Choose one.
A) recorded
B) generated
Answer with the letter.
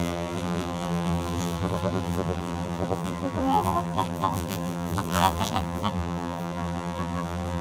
B